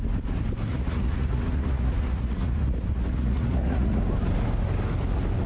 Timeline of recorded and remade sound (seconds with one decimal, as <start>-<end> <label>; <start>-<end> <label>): 0.0-0.7 recorded; 0.7-4.0 remade; 4.0-5.5 recorded